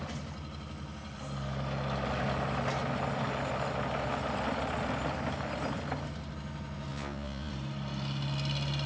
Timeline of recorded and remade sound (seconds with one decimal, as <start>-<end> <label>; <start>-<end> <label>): 0.0-6.9 recorded; 6.9-7.5 remade; 7.5-8.9 recorded